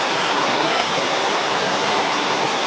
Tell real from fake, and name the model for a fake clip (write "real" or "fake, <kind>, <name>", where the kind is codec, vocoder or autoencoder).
fake, codec, SNAC